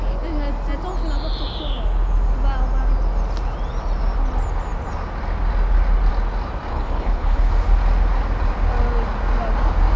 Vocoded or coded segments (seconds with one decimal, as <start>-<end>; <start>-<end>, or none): 6.7-7.5